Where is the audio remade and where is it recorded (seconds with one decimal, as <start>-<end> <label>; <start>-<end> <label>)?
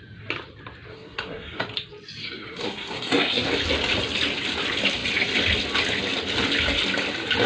0.0-0.9 recorded; 0.9-1.6 remade; 1.6-2.2 recorded; 2.2-3.5 remade; 3.5-7.5 recorded